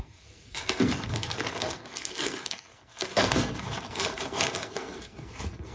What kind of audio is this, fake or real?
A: fake